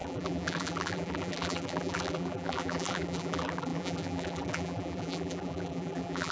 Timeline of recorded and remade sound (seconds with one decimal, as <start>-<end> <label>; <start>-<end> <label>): 0.0-6.3 remade